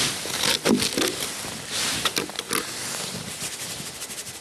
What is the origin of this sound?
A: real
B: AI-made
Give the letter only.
A